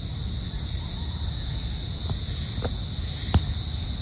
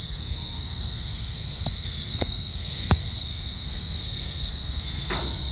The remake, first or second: second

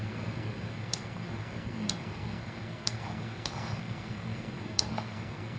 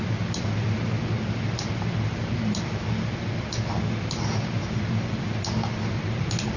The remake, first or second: first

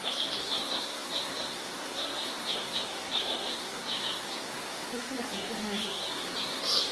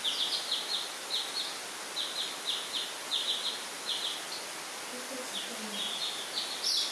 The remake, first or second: first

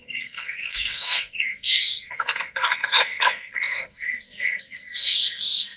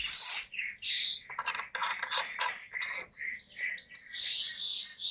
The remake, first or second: first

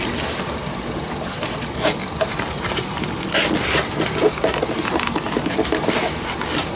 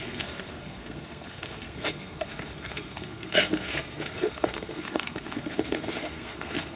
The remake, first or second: second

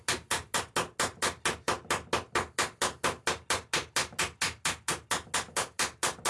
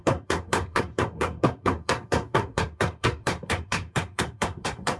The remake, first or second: second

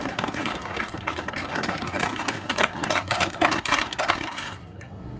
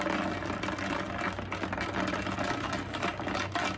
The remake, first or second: first